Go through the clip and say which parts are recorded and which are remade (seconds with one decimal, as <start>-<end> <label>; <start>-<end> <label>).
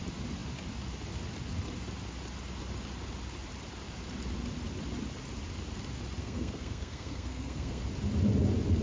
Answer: 0.0-6.2 recorded; 6.2-7.8 remade; 7.8-8.8 recorded